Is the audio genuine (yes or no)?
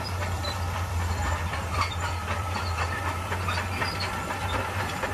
no